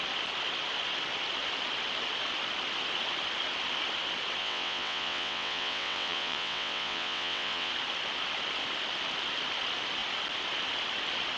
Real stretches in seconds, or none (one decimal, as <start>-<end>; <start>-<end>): 0.0-4.4; 7.7-11.4